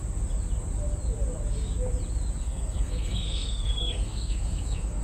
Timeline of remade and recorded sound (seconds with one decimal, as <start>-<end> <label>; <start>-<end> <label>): 0.0-2.4 recorded; 2.4-5.0 remade

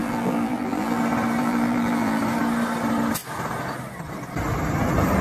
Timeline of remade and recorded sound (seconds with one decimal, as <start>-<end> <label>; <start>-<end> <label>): 0.0-1.0 remade; 1.0-1.4 recorded; 1.4-2.2 remade; 2.2-5.2 recorded